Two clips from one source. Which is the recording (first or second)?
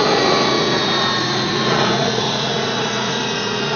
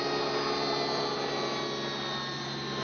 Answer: second